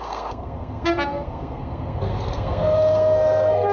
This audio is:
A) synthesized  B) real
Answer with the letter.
A